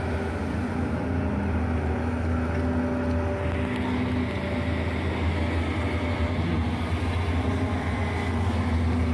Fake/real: real